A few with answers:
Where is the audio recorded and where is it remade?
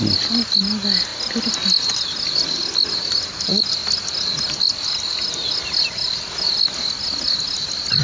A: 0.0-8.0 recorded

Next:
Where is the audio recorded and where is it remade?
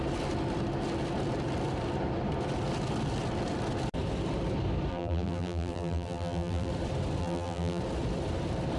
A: 0.0-4.9 recorded; 4.9-6.7 remade; 6.7-7.2 recorded; 7.2-7.8 remade; 7.8-8.8 recorded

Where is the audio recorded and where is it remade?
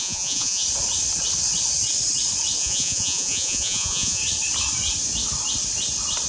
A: 0.0-0.6 remade; 0.6-2.6 recorded; 2.6-4.2 remade; 4.2-6.3 recorded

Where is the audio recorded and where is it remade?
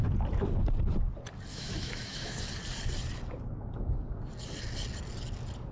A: 0.0-1.5 recorded; 1.5-2.4 remade; 2.4-5.7 recorded